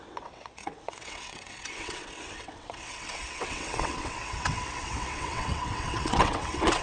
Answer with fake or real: fake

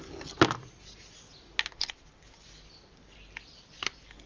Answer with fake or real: real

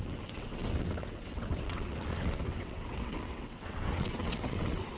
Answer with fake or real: fake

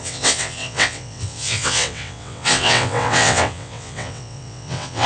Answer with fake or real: fake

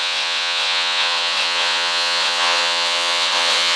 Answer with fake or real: fake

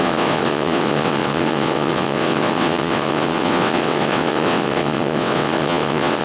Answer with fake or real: fake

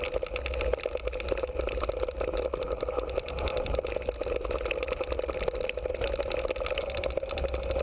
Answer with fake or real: real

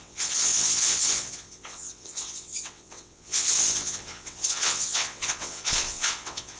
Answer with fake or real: fake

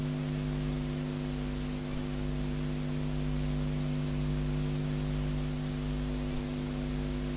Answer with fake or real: real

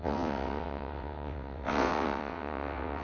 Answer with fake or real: fake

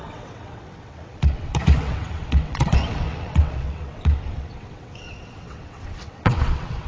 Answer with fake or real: fake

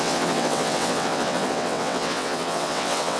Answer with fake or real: fake